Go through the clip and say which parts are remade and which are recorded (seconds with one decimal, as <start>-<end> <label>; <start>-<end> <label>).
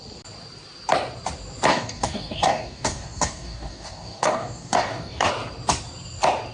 0.0-1.7 recorded; 1.7-5.3 remade; 5.3-6.5 recorded